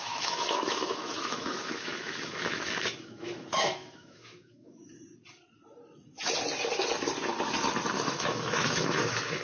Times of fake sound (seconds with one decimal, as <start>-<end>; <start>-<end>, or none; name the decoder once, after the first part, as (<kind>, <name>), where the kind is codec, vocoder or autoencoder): 0.0-4.8 (autoencoder, DAC-VAE); 7.9-9.4